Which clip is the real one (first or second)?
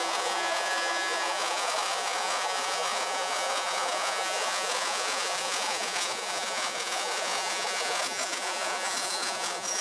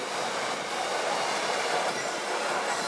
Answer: second